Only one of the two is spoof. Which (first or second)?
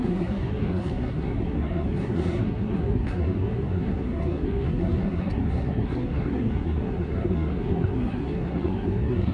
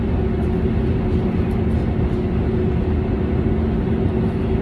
first